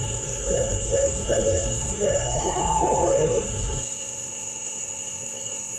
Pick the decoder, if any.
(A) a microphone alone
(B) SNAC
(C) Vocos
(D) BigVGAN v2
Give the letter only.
B